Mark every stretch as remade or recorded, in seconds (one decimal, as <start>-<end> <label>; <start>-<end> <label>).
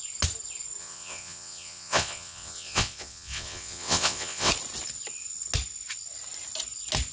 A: 0.0-0.8 recorded; 0.8-4.5 remade; 4.5-7.1 recorded